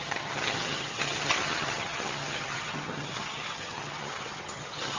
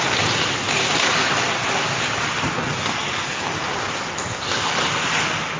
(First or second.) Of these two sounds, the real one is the second